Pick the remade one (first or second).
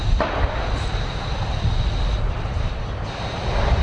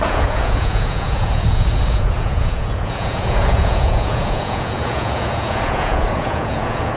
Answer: second